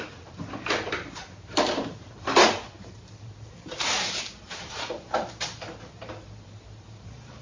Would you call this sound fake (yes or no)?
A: yes